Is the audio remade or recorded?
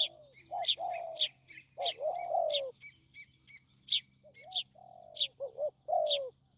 recorded